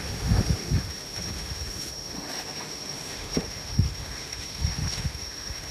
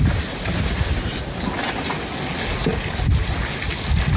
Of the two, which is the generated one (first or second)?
first